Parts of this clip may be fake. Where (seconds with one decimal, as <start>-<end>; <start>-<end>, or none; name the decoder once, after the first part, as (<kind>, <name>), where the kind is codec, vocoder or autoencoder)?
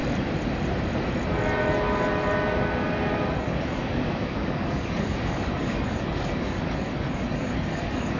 3.4-8.2 (codec, DAC)